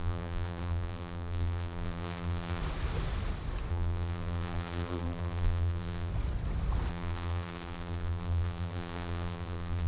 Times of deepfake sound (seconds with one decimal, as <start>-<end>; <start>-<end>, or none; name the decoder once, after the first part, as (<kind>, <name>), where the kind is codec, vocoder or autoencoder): 0.0-2.6 (vocoder, BigVGAN v2); 3.7-6.1; 6.9-9.9